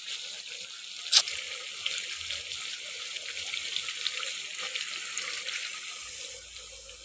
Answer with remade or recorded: recorded